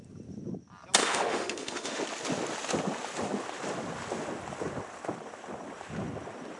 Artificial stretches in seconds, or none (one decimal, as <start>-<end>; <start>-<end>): 1.0-2.0